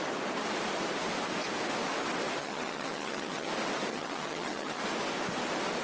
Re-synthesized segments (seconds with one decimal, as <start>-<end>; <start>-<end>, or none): 2.4-3.5; 3.9-4.8